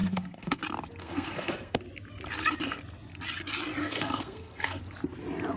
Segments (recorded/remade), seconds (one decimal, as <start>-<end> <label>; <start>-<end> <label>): 0.0-0.6 remade; 0.6-1.0 recorded; 1.0-1.8 remade; 1.8-3.8 recorded; 3.8-4.8 remade; 4.8-5.6 recorded